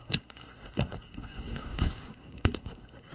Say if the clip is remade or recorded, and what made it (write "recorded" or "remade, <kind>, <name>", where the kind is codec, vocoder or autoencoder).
remade, codec, SNAC